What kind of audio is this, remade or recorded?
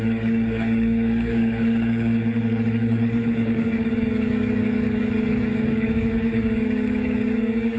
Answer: remade